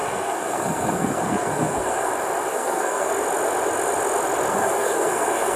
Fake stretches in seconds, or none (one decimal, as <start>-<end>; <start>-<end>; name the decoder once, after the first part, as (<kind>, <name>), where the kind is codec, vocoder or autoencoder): 0.0-2.1 (codec, SNAC); 2.5-3.1; 4.5-5.6